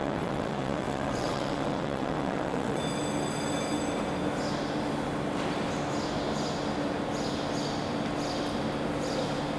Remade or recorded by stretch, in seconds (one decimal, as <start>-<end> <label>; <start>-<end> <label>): 0.0-2.8 remade; 2.8-9.6 recorded